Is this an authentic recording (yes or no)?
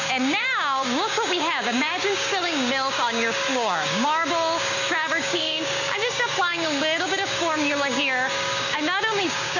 no